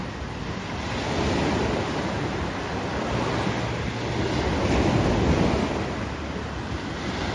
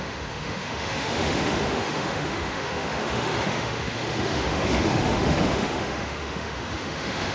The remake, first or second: second